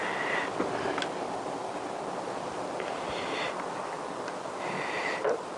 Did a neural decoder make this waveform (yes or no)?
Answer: no